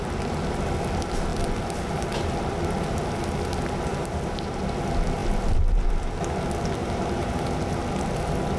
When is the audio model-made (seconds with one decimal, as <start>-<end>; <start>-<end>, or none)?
3.9-4.6; 6.8-7.3